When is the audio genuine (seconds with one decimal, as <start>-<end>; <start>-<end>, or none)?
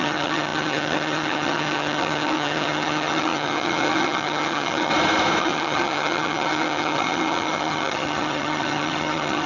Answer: 4.9-5.4